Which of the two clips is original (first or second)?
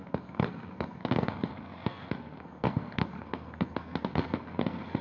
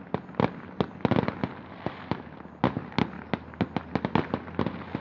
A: second